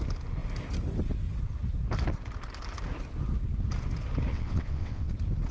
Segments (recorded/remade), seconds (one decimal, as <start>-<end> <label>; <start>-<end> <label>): 0.0-4.3 recorded; 4.3-5.1 remade; 5.1-5.5 recorded